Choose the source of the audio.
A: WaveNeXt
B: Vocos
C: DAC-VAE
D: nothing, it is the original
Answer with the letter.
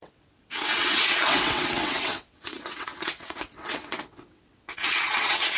A